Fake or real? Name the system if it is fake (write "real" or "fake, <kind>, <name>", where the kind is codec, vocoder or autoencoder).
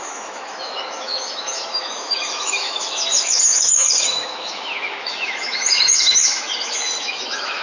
fake, autoencoder, DAC-VAE